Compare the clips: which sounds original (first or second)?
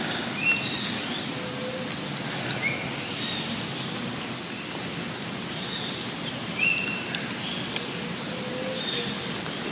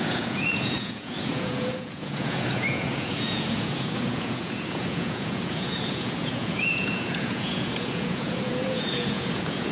first